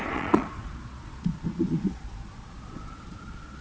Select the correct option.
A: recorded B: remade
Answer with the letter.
B